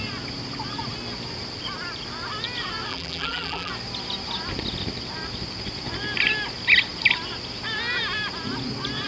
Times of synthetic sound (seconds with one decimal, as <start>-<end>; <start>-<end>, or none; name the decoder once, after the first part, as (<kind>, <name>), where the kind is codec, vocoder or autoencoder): 2.9-3.7 (vocoder, BigVGAN v2)